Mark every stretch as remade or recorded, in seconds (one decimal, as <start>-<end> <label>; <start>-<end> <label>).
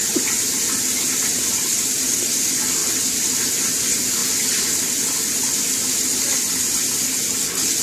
0.0-7.8 recorded